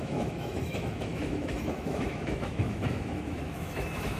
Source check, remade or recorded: remade